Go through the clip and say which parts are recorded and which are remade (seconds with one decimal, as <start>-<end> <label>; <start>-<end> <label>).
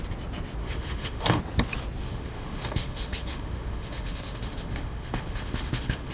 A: 0.0-0.6 recorded; 0.6-1.4 remade; 1.4-2.0 recorded; 2.0-6.1 remade